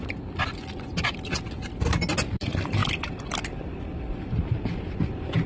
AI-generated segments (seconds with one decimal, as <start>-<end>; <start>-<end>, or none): none